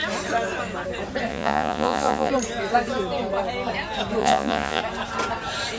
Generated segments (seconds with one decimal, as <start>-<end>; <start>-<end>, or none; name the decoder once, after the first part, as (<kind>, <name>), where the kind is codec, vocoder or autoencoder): 1.3-2.3 (vocoder, Vocos); 4.2-4.8